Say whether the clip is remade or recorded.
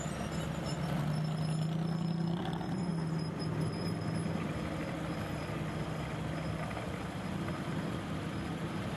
recorded